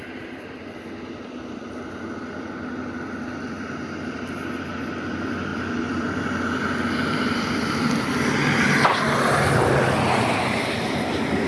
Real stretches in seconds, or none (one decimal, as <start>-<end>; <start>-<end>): 0.0-11.5